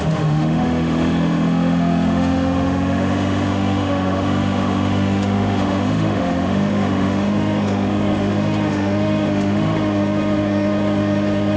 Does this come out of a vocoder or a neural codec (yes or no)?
yes